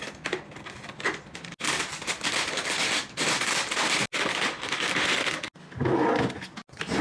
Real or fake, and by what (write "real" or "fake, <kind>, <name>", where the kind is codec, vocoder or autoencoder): real